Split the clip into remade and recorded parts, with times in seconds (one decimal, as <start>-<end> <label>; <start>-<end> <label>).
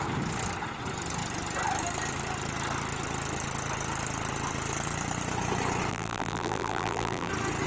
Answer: 0.0-5.9 recorded; 5.9-7.3 remade; 7.3-7.7 recorded